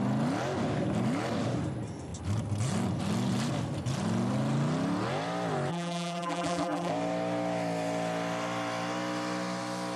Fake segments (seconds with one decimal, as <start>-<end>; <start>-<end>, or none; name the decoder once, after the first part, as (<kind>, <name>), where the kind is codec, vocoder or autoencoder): 5.7-6.9 (vocoder, BigVGAN v2)